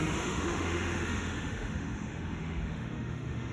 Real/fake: fake